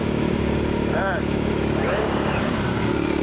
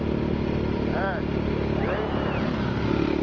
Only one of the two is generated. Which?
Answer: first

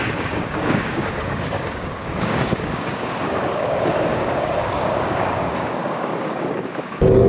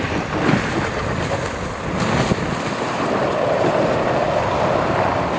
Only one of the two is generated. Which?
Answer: first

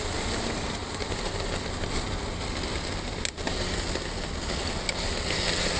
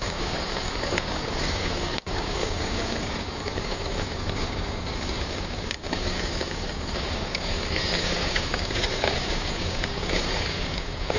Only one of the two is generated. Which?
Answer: second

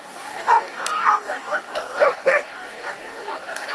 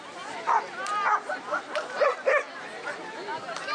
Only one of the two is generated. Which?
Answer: first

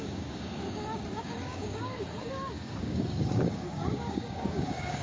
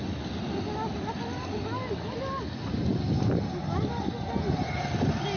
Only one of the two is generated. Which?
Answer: first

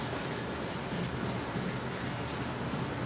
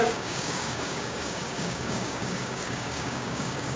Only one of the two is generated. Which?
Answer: second